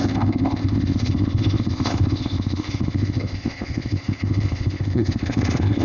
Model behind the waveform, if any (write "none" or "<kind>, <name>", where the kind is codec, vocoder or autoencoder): codec, ZipCodec